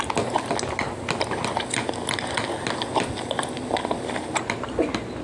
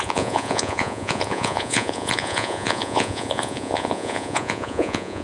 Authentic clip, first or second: first